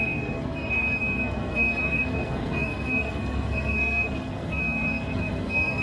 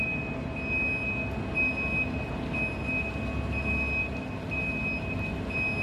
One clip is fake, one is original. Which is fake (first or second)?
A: first